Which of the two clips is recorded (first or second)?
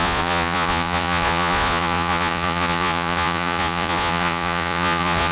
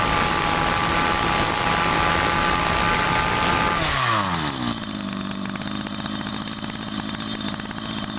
second